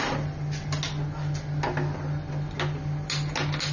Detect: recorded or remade recorded